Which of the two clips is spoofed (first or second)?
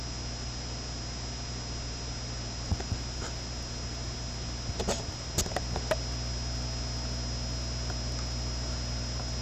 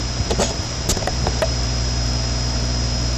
second